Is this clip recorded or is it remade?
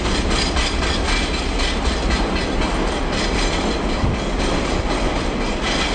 recorded